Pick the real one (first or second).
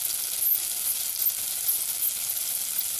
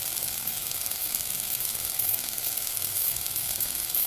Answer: first